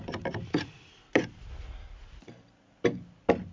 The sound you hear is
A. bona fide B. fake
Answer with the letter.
B